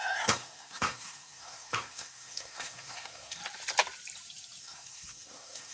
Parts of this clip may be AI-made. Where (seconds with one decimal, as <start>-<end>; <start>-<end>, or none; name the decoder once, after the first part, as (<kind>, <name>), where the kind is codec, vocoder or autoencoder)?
0.0-3.4 (codec, SNAC); 4.6-5.7